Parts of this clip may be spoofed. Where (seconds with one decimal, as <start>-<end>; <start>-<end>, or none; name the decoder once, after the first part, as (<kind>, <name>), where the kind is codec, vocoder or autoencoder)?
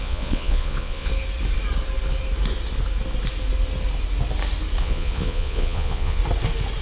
0.0-1.1 (vocoder, Vocos); 4.8-6.2